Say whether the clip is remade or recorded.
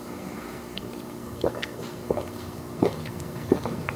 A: remade